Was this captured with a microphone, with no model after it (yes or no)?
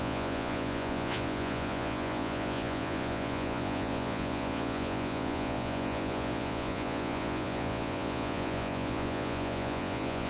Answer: no